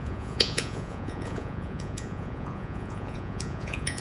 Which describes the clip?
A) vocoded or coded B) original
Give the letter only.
A